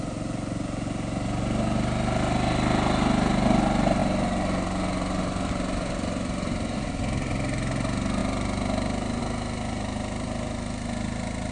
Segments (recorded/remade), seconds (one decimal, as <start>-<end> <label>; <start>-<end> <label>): 0.0-11.5 recorded